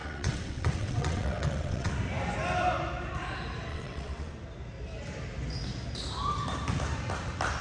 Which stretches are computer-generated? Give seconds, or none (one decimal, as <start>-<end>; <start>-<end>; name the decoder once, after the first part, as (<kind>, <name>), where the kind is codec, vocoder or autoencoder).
0.0-1.9 (vocoder, WaveNeXt); 3.7-4.3